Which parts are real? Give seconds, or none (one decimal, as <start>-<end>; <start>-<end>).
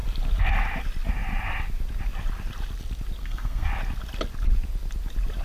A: 0.0-3.2; 3.7-5.4